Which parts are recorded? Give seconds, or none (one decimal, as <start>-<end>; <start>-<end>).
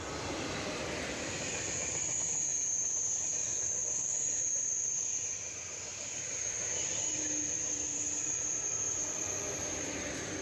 0.0-4.1; 5.0-5.9; 6.5-10.4